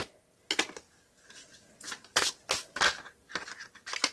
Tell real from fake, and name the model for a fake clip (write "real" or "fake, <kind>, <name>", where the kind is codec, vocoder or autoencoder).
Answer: real